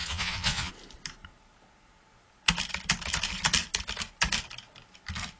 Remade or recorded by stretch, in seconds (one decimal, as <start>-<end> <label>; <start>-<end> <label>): 0.0-0.7 remade; 0.7-5.4 recorded